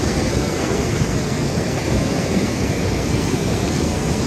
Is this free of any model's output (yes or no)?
no